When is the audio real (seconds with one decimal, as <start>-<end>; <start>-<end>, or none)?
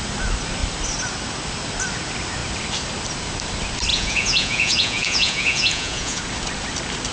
0.0-3.9; 6.2-7.1